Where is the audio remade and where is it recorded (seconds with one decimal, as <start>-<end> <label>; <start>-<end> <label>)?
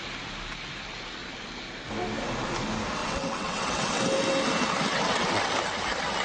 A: 0.0-3.0 recorded; 3.0-4.0 remade; 4.0-4.9 recorded; 4.9-5.5 remade; 5.5-6.2 recorded